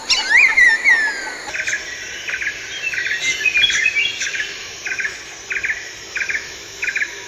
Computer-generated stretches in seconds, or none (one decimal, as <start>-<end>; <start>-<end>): 4.2-5.2; 6.1-7.3